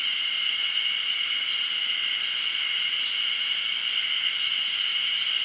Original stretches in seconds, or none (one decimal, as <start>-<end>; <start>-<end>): 1.3-2.8; 3.8-4.4